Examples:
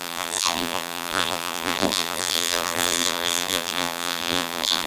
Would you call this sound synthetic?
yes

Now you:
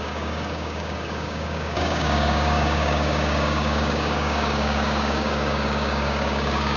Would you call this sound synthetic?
yes